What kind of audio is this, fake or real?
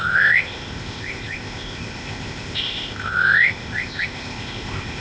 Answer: fake